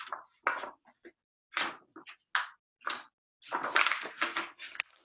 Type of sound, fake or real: real